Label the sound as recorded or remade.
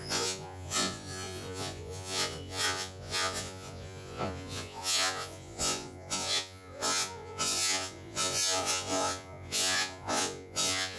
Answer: remade